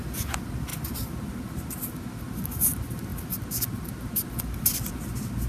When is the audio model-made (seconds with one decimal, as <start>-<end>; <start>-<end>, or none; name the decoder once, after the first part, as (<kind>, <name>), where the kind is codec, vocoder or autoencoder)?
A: none